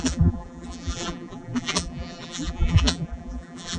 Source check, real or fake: fake